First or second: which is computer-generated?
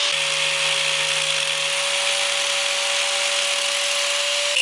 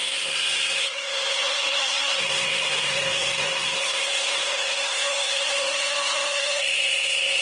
second